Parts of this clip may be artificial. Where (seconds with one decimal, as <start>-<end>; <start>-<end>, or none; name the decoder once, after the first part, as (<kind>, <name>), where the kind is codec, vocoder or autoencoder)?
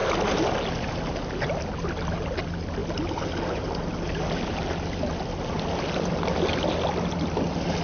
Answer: none